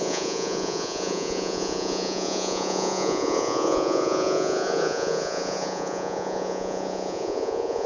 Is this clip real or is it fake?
fake